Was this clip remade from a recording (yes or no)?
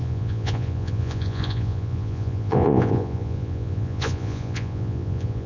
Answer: yes